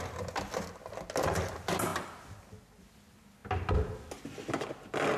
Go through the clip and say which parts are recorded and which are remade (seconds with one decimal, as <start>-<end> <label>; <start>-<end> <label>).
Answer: 0.0-5.2 recorded